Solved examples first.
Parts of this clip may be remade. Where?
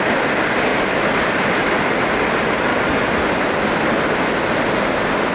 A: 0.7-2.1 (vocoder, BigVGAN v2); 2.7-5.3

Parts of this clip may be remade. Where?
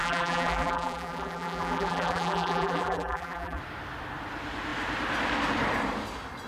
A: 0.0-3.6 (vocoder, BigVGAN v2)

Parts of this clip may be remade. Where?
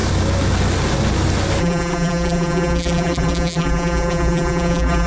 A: 1.6-5.1 (vocoder, BigVGAN v2)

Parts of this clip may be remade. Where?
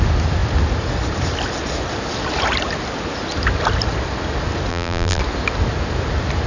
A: 4.7-5.2 (vocoder, BigVGAN v2)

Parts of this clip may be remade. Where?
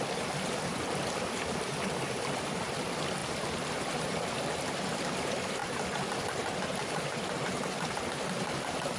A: 0.0-3.2 (vocoder, BigVGAN v2); 4.0-5.6; 8.0-9.0